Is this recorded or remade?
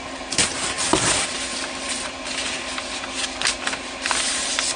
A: remade